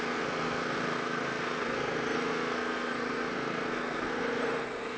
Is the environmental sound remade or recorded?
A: remade